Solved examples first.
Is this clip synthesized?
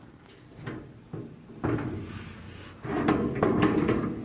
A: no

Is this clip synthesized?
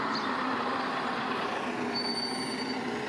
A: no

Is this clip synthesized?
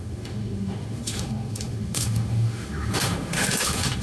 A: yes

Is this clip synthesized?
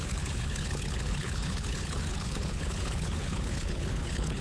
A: yes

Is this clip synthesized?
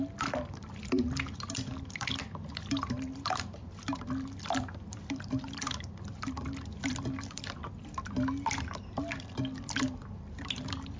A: yes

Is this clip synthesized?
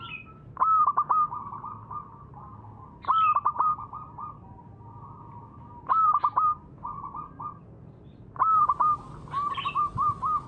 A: no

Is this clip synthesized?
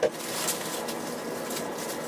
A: no